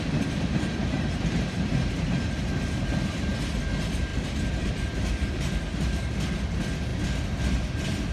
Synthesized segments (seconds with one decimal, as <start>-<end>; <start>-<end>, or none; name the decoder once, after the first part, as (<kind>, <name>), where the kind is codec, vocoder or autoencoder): 0.8-1.9 (vocoder, BigVGAN v2); 4.1-5.3